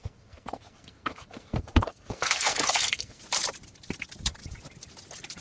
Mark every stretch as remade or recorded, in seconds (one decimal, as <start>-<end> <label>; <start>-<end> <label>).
0.0-3.2 remade; 3.2-5.4 recorded